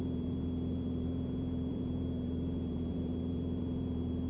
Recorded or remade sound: remade